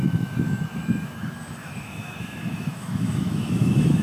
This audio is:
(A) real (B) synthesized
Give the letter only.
B